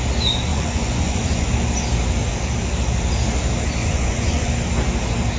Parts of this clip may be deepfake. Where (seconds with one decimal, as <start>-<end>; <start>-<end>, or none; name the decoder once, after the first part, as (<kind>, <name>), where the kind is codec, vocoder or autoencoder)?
0.5-1.5 (vocoder, Vocos); 3.8-4.5